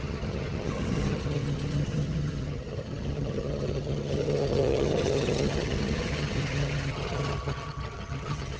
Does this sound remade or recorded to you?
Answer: remade